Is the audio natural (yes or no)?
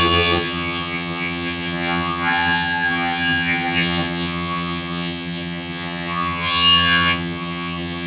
no